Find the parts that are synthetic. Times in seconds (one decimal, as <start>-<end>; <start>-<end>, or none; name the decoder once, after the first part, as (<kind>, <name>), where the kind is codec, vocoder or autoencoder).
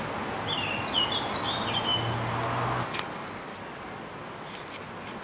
none